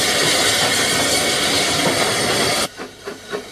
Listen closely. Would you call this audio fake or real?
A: fake